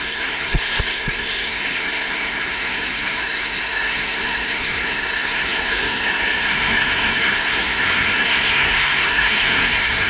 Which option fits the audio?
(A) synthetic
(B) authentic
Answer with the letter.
A